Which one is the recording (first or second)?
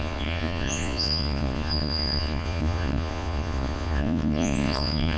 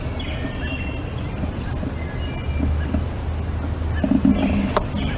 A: second